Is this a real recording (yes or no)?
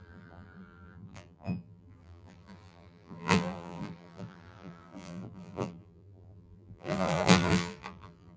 no